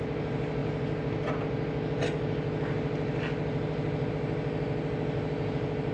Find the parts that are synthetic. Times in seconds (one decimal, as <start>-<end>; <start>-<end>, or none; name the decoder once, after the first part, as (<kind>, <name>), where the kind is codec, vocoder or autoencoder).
none